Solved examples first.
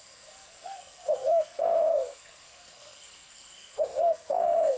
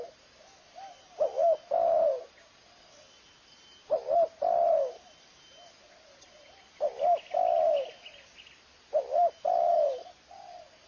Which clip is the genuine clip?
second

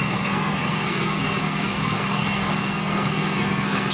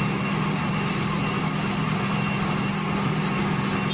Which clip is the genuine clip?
second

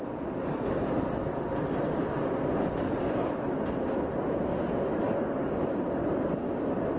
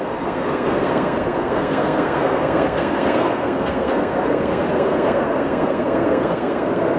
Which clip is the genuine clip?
first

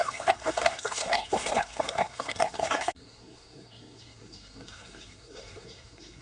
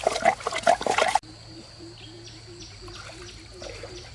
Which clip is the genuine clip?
second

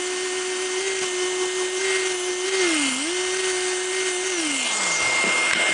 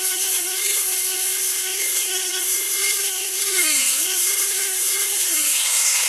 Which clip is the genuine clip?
first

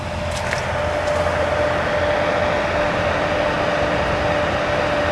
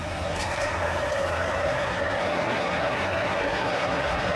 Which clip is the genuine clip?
first